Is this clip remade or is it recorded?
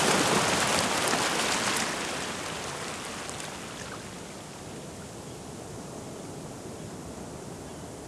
recorded